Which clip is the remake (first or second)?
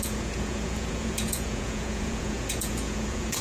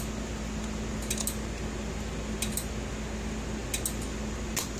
first